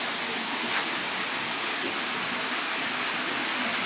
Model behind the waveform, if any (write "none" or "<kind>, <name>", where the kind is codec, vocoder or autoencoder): none